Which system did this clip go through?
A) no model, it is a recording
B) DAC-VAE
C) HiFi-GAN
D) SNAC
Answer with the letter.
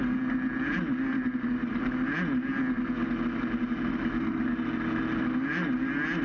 A